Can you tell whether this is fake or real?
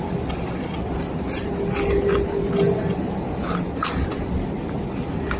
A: real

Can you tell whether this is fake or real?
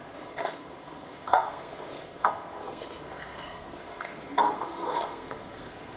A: fake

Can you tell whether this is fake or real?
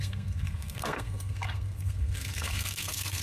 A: fake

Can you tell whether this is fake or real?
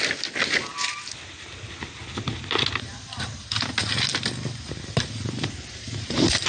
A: real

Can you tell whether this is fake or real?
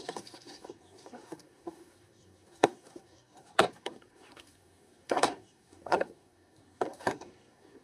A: fake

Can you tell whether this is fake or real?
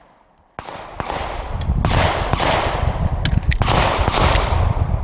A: real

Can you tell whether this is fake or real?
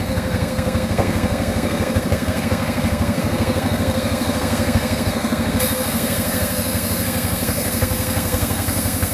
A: fake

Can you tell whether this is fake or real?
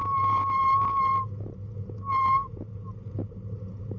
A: real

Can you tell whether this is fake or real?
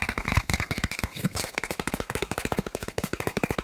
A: fake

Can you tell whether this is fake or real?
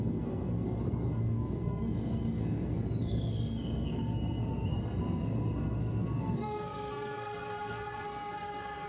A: fake